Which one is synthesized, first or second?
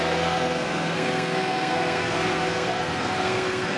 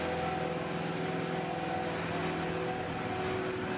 first